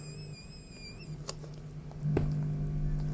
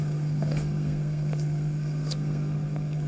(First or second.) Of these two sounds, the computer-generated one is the second